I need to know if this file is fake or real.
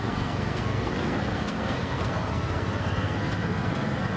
fake